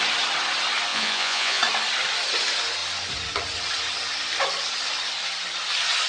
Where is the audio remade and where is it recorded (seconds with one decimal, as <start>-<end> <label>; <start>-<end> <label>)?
0.0-0.9 recorded; 0.9-1.6 remade; 1.6-6.1 recorded